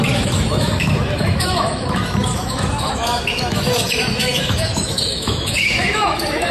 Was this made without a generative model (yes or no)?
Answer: no